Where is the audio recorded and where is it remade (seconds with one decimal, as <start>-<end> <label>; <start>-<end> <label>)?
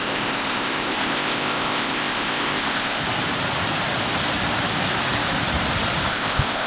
0.0-3.0 remade; 3.0-6.1 recorded; 6.1-6.7 remade